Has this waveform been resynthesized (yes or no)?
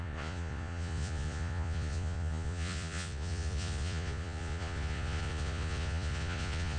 yes